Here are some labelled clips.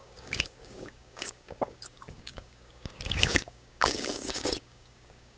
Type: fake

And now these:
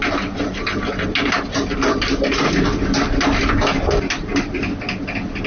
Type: real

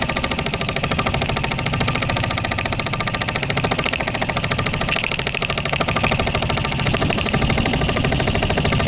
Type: real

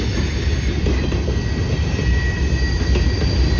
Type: real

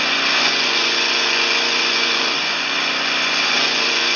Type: fake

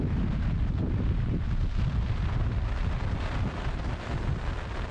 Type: real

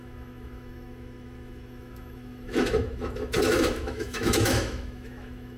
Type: fake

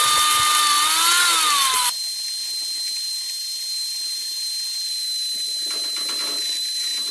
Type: real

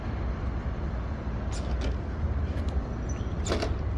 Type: real